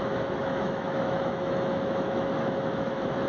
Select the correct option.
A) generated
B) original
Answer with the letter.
A